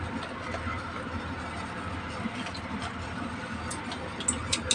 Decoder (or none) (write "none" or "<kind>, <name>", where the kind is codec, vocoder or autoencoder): none